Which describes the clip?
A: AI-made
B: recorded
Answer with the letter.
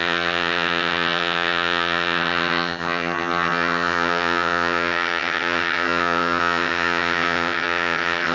A